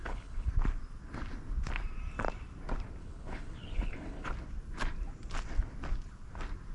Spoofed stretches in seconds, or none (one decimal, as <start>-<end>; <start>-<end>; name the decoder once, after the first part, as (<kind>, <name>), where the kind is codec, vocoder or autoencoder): 0.0-0.5 (codec, HILCodec); 3.0-4.3